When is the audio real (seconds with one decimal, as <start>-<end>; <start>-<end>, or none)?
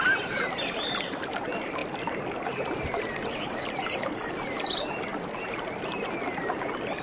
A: 5.1-6.2